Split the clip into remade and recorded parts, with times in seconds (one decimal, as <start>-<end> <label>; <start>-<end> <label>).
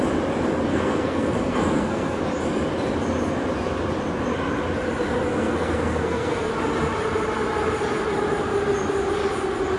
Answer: 0.0-0.7 recorded; 0.7-2.2 remade; 2.2-5.3 recorded; 5.3-6.5 remade; 6.5-9.8 recorded